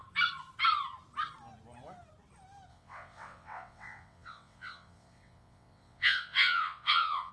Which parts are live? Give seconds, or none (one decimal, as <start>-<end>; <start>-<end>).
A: 0.0-2.7